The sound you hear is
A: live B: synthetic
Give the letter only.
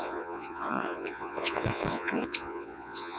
B